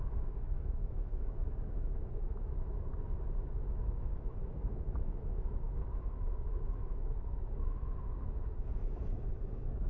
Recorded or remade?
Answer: remade